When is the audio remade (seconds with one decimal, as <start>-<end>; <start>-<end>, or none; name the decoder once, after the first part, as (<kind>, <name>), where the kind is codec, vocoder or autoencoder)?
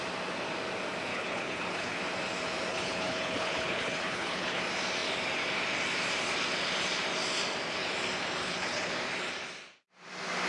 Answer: 1.1-2.0 (codec, HILCodec); 2.7-4.6; 8.4-8.9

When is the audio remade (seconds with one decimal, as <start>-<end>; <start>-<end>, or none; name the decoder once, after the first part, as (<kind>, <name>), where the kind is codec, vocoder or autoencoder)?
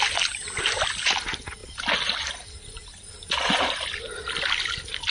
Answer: none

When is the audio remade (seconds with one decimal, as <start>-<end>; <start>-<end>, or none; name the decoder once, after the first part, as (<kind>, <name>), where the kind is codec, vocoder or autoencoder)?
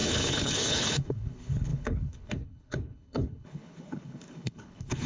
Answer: 0.0-5.1 (codec, HILCodec)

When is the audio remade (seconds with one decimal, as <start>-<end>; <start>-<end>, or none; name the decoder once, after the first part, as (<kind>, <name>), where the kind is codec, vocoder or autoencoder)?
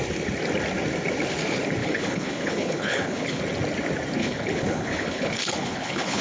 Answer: 1.8-3.4 (codec, HILCodec); 4.2-6.2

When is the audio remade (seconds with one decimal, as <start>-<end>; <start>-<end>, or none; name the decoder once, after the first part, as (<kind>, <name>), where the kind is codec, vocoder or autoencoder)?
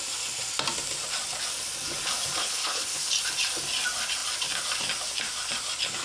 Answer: 2.4-3.1 (codec, HILCodec)